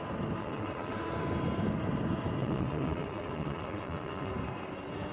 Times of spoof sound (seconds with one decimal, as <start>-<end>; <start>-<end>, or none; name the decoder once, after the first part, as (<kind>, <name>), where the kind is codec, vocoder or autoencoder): 0.4-1.0 (vocoder, WaveNeXt); 2.4-4.3